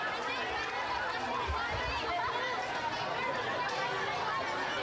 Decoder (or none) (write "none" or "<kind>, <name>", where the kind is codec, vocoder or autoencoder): none